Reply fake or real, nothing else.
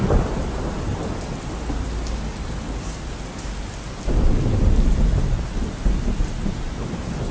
real